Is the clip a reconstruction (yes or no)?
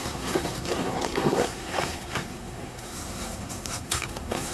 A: yes